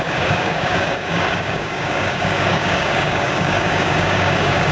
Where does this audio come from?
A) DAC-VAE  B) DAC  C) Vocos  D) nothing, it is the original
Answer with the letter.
B